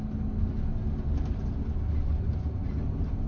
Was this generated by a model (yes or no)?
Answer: no